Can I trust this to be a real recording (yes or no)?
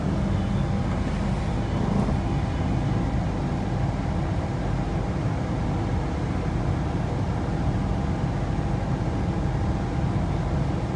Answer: yes